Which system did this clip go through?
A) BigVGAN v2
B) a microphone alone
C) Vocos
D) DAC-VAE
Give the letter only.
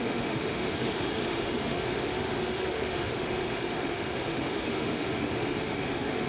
D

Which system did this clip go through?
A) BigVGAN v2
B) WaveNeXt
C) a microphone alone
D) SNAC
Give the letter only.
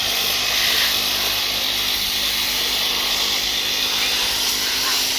C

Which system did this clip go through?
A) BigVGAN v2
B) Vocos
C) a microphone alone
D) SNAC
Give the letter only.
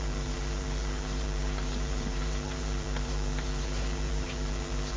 A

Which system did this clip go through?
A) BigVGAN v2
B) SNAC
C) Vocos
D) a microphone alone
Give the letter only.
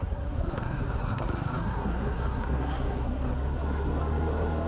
B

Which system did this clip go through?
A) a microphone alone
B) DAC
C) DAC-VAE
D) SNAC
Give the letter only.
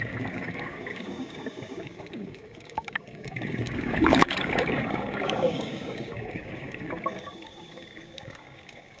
B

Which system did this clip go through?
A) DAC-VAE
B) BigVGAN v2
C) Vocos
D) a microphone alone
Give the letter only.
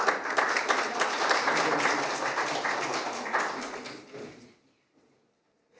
D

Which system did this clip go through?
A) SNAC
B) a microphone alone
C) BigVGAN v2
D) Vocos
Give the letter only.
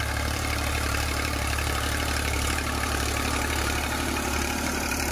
C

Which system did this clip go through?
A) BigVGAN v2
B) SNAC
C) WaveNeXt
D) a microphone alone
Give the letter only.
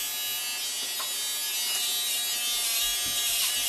D